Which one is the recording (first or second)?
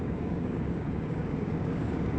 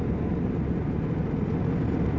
second